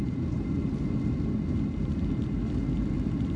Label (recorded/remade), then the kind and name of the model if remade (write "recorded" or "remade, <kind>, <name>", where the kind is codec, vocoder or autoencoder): recorded